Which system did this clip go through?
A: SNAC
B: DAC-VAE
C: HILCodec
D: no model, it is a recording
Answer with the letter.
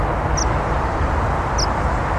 D